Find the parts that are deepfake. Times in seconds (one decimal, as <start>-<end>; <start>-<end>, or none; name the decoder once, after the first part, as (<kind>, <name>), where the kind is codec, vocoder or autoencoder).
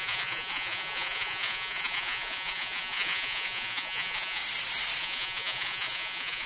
0.0-4.4 (vocoder, Vocos); 5.0-6.5